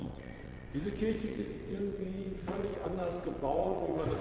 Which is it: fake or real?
fake